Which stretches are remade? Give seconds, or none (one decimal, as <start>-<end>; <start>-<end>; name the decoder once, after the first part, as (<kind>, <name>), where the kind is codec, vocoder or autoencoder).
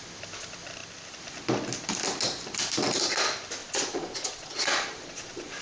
3.6-5.6 (vocoder, Vocos)